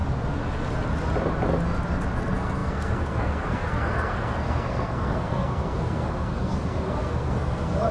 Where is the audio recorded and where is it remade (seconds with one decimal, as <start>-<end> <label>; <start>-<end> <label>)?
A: 0.0-2.2 recorded; 2.2-7.9 remade